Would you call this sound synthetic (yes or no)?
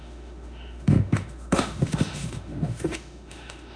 yes